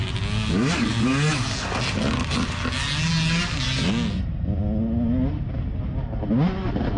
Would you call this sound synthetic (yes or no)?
no